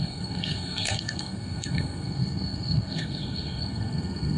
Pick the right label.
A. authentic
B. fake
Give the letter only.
B